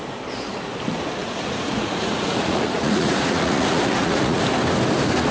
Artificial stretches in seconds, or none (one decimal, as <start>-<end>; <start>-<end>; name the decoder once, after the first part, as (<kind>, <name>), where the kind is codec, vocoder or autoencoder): 1.2-4.4 (vocoder, Vocos)